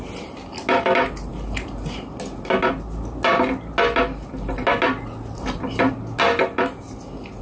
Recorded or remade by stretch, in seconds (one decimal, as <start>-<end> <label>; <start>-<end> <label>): 0.0-7.4 recorded